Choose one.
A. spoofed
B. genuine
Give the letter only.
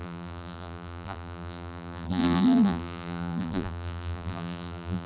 A